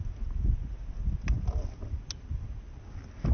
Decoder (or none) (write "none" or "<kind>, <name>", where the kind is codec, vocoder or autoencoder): none